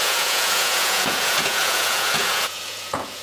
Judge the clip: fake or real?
fake